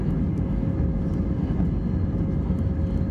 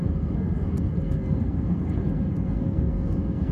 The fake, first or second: second